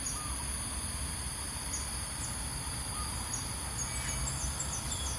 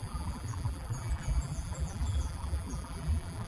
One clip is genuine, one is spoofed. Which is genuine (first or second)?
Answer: first